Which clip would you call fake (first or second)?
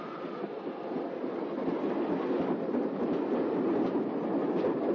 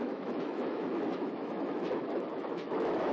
second